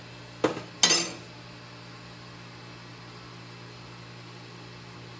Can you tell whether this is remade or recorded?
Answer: recorded